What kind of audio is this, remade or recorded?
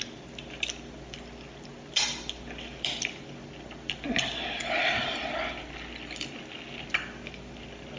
recorded